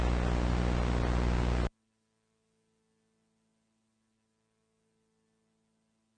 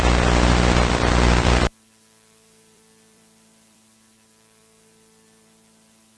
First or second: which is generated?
second